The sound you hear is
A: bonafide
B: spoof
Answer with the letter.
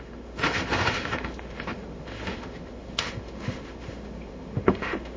B